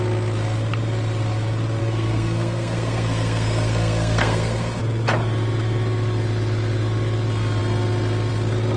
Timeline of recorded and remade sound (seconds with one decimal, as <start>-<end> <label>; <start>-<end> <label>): 0.0-1.8 recorded; 1.8-4.8 remade; 4.8-8.8 recorded